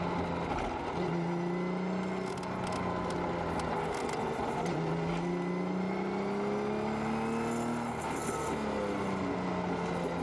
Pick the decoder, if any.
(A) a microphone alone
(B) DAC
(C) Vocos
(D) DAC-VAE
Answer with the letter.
A